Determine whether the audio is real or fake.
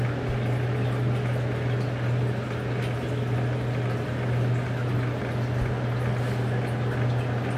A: real